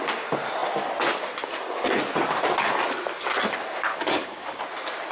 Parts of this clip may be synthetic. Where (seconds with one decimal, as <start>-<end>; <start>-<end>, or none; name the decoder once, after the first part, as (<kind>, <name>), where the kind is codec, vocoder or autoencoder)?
3.9-4.6 (codec, DAC)